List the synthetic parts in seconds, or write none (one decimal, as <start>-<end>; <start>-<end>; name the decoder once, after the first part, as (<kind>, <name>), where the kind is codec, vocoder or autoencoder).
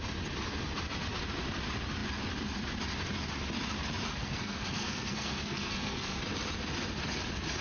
4.2-6.2 (codec, SNAC)